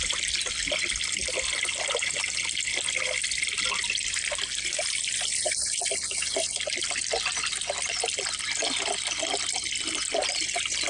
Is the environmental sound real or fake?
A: real